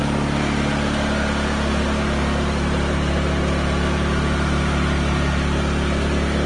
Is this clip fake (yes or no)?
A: no